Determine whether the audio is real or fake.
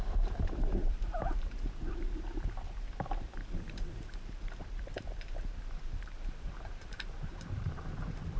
fake